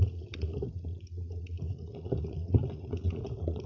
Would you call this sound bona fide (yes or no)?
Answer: no